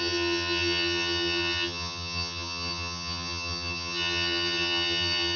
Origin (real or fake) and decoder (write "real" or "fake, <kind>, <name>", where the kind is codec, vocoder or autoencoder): fake, vocoder, HiFi-GAN